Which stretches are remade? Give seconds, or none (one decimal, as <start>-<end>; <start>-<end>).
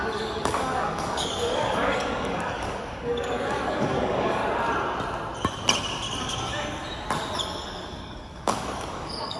0.0-4.4; 6.2-6.8; 7.4-9.4